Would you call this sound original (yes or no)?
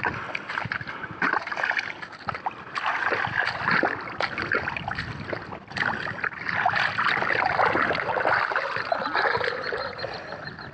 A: yes